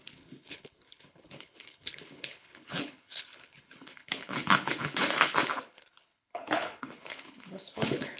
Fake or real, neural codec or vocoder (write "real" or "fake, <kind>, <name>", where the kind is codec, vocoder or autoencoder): fake, codec, HILCodec